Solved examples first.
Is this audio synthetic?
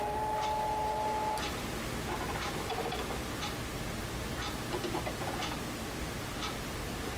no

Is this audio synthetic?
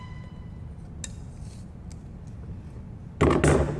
no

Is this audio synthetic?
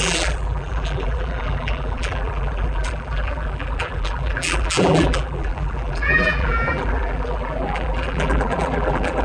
yes